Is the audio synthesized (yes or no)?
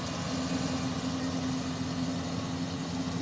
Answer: no